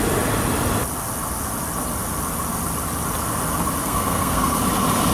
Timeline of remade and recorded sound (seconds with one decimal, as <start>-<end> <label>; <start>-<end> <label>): 0.0-3.8 recorded; 3.8-4.6 remade; 4.6-5.1 recorded